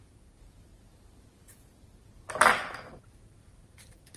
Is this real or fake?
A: real